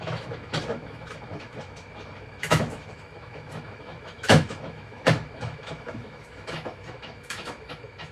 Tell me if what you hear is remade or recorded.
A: remade